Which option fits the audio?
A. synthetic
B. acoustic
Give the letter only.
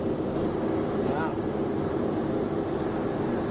B